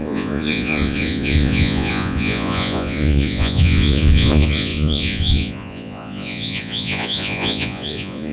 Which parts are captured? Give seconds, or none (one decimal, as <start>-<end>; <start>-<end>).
none